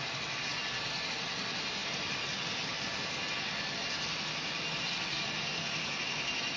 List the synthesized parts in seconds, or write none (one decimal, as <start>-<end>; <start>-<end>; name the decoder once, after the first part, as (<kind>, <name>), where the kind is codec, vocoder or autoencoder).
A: none